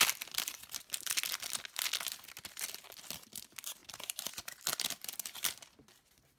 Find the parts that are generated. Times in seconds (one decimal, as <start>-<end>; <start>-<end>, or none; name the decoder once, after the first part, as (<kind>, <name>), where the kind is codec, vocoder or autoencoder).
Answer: none